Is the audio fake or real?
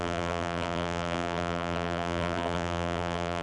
fake